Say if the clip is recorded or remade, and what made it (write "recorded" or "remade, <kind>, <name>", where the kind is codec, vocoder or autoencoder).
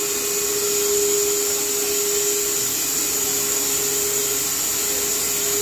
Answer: recorded